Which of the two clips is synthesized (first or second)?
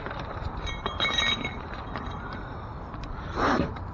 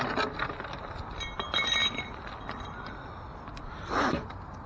first